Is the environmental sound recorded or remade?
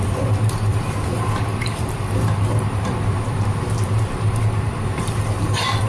remade